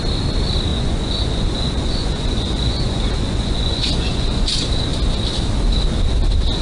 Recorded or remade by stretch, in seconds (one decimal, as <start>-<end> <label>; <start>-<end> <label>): 0.0-0.7 recorded; 0.7-4.5 remade; 4.5-6.6 recorded